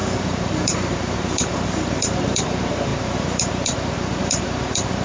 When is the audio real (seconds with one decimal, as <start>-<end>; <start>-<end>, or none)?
none